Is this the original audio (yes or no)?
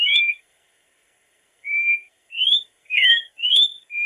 no